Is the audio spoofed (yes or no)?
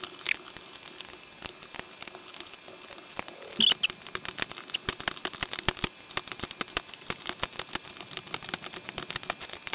no